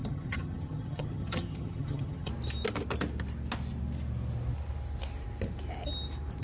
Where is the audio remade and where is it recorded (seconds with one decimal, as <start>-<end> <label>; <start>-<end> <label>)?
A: 0.0-2.3 remade; 2.3-6.4 recorded